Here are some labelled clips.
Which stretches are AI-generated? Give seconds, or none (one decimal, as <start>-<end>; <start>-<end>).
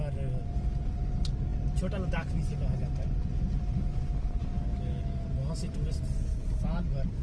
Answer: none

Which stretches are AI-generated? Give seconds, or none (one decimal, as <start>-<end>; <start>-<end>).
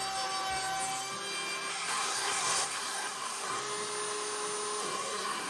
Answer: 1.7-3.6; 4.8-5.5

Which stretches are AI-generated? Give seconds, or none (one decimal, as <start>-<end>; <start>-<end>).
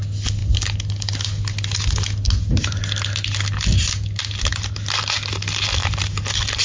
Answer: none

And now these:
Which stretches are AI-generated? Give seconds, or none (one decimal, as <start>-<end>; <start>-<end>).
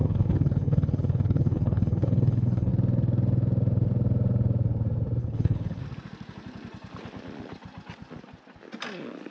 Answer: 0.0-2.7; 5.2-5.8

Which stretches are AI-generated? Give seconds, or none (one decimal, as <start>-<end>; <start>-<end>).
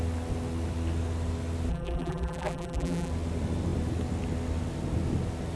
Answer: 1.7-3.1